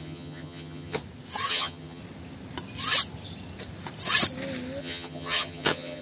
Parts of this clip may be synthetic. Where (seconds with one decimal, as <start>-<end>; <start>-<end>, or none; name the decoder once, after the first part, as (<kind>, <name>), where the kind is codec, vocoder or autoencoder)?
0.0-1.0 (vocoder, HiFi-GAN); 1.5-2.0; 4.8-6.0